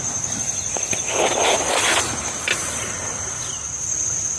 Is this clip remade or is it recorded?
recorded